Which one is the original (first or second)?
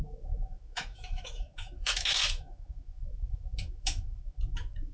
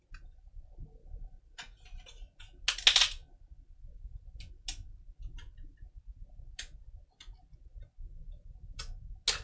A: second